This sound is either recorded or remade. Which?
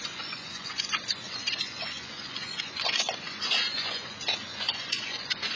remade